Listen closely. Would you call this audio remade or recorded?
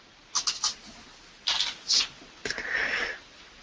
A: recorded